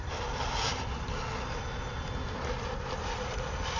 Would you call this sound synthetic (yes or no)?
no